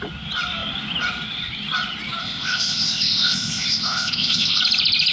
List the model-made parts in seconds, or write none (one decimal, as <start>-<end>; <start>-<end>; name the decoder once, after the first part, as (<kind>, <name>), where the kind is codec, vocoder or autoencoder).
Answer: 2.2-4.6 (codec, ZipCodec)